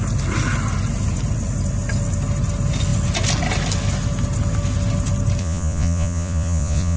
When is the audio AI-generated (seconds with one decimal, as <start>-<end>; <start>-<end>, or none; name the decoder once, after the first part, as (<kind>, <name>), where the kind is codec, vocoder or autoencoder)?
5.4-7.0 (vocoder, Vocos)